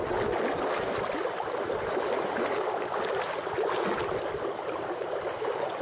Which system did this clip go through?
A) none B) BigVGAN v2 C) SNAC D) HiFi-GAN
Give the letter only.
A